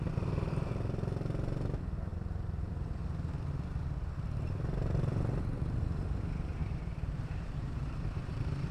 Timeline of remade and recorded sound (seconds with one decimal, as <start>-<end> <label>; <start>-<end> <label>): 0.0-2.1 recorded; 2.1-2.7 remade; 2.7-6.6 recorded; 6.6-8.7 remade